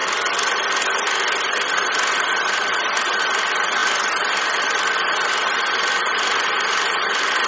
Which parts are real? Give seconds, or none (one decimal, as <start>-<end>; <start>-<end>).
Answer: 0.0-7.5